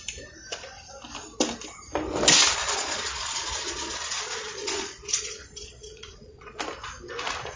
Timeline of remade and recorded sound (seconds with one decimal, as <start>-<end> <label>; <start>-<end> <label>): 0.0-2.6 recorded; 2.6-6.6 remade; 6.6-7.6 recorded